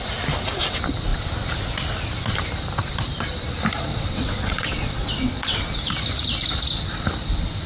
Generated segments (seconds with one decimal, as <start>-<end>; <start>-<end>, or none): 3.9-5.6